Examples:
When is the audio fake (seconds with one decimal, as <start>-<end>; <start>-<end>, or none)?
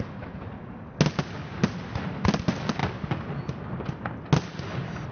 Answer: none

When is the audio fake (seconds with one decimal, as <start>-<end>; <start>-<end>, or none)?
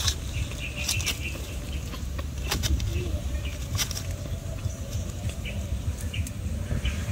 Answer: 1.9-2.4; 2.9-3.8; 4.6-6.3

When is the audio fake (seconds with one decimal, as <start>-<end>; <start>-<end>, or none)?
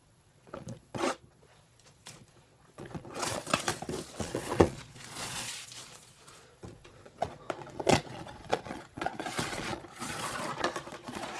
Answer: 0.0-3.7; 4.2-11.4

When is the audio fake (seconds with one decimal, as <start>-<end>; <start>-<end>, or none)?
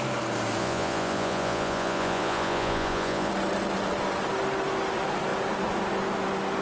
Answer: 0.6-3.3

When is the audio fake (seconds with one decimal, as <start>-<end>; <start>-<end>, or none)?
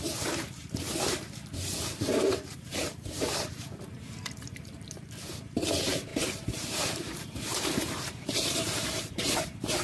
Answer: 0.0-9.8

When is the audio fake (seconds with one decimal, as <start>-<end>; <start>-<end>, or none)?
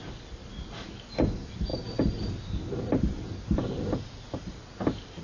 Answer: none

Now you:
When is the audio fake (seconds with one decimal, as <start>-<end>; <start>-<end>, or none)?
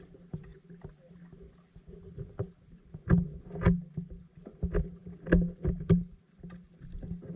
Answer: none